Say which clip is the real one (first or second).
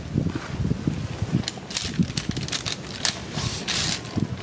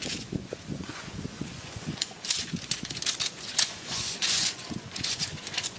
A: first